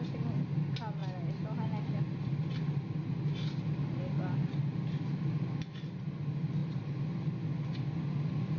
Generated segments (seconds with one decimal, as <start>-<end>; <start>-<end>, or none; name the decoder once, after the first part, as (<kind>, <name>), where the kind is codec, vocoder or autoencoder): 6.6-7.4 (vocoder, BigVGAN v2)